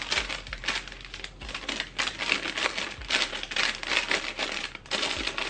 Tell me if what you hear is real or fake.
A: real